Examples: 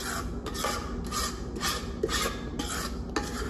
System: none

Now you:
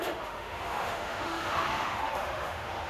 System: autoencoder, DAC-VAE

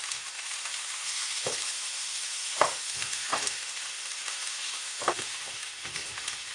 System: autoencoder, DAC-VAE